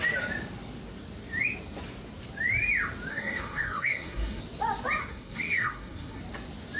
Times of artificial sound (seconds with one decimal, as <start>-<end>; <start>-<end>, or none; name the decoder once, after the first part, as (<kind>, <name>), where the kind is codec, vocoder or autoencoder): 3.1-4.4 (codec, SNAC); 5.0-6.2